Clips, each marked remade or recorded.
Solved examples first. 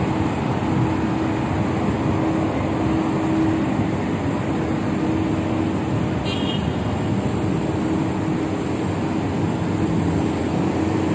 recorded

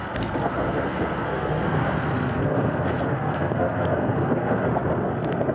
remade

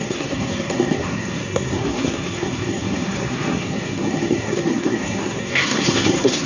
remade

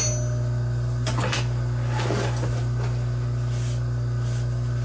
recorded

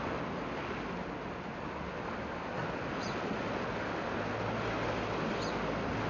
recorded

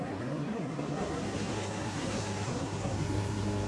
remade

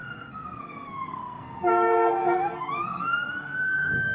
remade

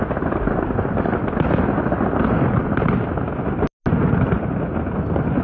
recorded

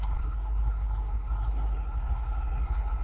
remade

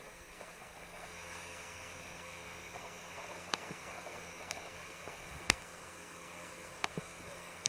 remade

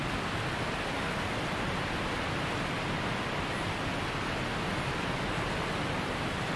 recorded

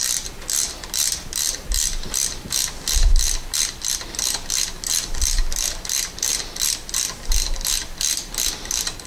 recorded